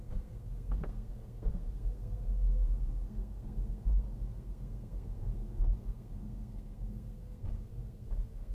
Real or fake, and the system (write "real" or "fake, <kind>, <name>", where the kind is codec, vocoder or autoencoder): fake, codec, SNAC